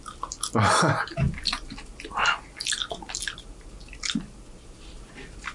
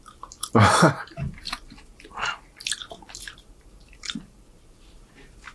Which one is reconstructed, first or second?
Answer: second